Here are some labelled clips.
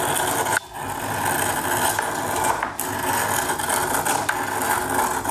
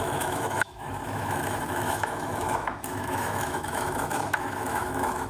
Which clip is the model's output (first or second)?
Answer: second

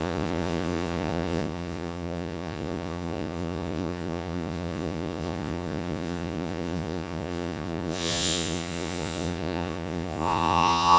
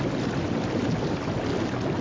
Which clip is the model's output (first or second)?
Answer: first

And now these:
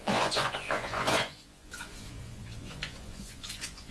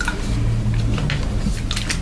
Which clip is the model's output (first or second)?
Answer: first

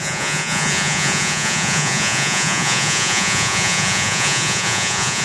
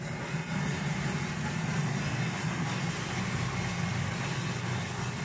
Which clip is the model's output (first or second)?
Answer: first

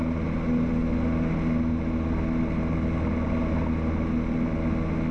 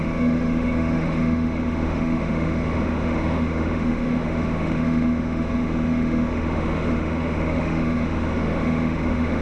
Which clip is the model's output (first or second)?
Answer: second